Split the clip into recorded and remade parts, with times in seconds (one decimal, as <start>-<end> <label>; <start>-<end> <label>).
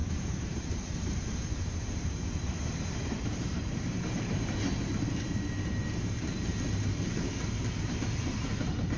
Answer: 0.0-4.6 remade; 4.6-9.0 recorded